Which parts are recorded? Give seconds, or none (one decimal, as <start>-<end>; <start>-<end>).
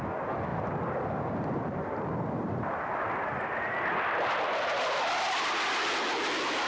0.0-0.5; 1.1-6.7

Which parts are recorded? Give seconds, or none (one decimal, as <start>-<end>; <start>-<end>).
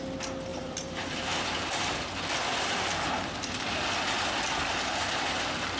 0.0-0.5; 3.6-5.8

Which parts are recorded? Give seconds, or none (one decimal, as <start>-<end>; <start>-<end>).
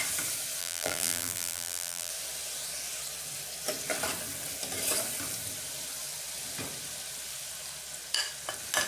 0.0-0.6; 2.1-8.9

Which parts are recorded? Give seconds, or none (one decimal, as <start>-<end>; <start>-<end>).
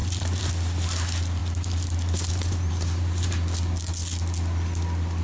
0.5-1.4; 3.3-5.2